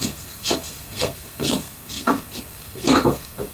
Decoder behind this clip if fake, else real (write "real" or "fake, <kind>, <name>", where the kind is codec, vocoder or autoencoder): fake, codec, SNAC